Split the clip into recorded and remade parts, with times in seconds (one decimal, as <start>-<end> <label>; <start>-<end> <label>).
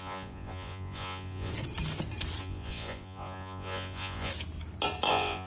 0.0-1.5 remade; 1.5-2.4 recorded; 2.4-4.3 remade; 4.3-5.1 recorded; 5.1-5.5 remade